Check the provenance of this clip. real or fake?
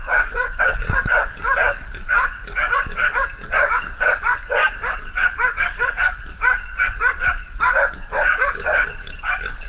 fake